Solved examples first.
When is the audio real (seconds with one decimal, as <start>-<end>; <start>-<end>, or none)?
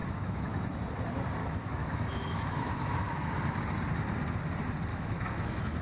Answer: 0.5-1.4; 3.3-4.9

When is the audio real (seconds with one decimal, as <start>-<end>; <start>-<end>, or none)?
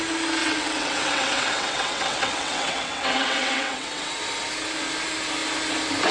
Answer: 0.0-0.4; 4.1-6.1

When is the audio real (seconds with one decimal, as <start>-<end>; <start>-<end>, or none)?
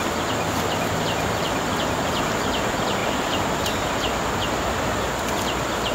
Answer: 0.0-5.9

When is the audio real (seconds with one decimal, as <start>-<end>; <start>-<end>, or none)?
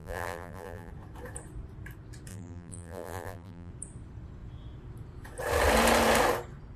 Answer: 0.9-2.3; 3.7-6.8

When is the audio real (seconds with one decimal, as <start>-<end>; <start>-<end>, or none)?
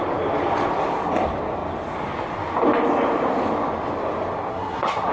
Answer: 0.0-4.5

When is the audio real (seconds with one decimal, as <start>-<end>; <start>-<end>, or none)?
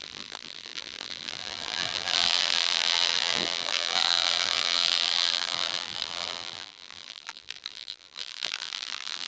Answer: none